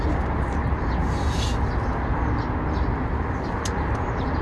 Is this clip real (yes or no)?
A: yes